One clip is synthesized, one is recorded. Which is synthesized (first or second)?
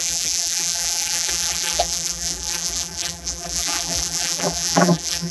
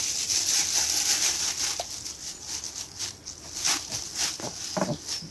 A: first